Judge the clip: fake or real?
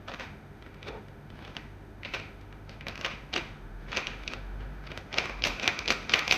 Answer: fake